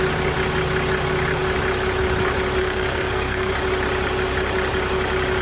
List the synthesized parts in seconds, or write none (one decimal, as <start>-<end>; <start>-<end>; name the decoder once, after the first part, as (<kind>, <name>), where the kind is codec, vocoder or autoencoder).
2.6-3.5 (codec, SNAC)